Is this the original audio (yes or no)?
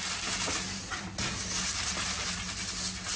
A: yes